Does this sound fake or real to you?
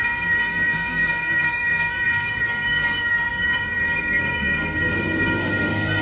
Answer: fake